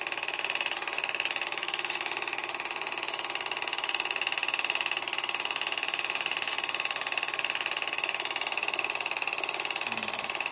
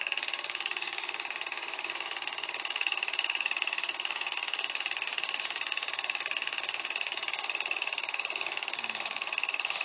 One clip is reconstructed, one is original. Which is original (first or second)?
first